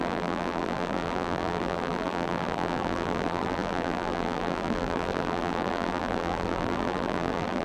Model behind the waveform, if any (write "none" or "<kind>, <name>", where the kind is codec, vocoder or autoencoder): vocoder, BigVGAN v2